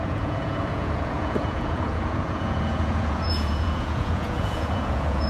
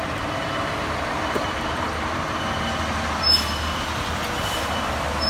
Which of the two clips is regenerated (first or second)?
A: first